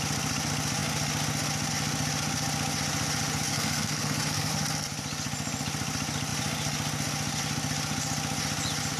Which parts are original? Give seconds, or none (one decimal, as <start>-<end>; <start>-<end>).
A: 0.0-3.5; 4.5-9.0